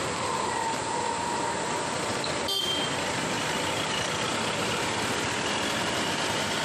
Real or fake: real